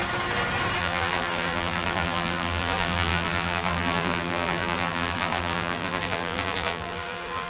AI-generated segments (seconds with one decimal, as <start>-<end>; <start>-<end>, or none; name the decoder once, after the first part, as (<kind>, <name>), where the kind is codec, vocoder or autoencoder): 0.8-7.5 (vocoder, BigVGAN v2)